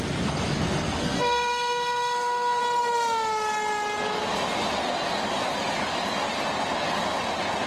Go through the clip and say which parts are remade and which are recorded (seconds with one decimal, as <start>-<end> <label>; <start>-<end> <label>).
0.0-1.0 recorded; 1.0-2.6 remade; 2.6-7.7 recorded